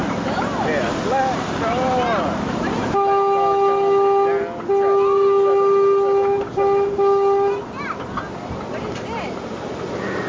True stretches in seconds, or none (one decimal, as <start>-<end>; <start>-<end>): 0.0-10.3